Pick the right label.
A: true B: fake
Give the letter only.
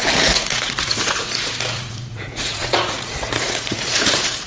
B